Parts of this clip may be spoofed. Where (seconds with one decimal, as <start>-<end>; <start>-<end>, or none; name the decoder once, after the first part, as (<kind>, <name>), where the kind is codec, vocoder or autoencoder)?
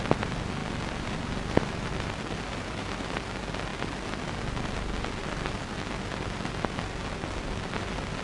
0.6-3.2 (vocoder, BigVGAN v2)